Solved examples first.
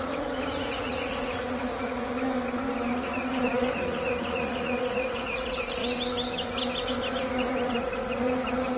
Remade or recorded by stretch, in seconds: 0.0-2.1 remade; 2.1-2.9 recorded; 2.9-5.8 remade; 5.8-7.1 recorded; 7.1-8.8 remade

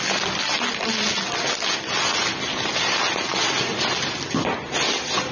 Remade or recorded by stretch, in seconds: 0.0-5.3 recorded

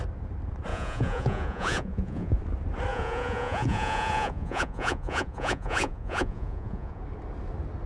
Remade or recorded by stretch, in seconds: 0.0-0.7 recorded; 0.7-2.4 remade; 2.4-2.9 recorded; 2.9-7.0 remade; 7.0-7.9 recorded

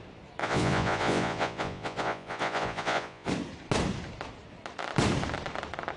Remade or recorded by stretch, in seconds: 0.0-0.4 recorded; 0.4-3.3 remade; 3.3-6.0 recorded